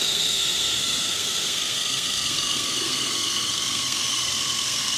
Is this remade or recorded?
remade